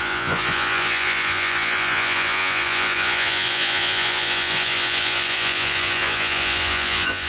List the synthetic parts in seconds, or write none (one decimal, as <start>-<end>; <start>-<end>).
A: 0.0-7.3